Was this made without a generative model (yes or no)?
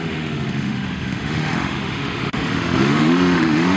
no